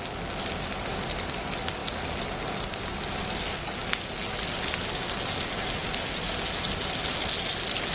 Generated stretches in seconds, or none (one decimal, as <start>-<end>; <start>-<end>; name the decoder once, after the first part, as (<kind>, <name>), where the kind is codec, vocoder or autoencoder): none